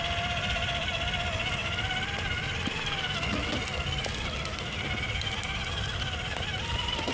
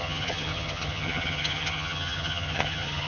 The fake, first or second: second